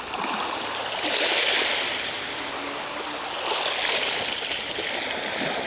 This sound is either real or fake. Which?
real